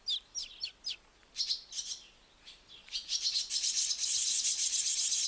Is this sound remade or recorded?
recorded